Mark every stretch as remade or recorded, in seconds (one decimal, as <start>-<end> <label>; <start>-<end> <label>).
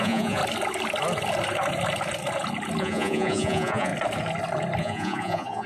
0.0-0.4 remade; 0.4-2.8 recorded; 2.8-3.9 remade; 3.9-4.8 recorded; 4.8-5.7 remade